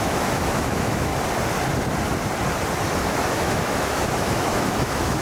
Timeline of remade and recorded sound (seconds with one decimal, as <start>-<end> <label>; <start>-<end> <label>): 0.0-1.1 remade; 1.1-3.0 recorded; 3.0-5.2 remade